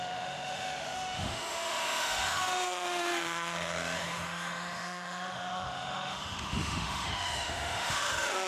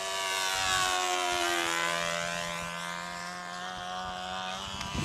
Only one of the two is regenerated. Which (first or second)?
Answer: first